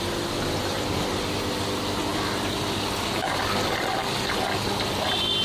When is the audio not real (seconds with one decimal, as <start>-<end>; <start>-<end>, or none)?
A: none